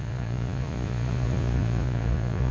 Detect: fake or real fake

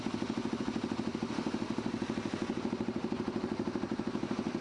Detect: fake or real real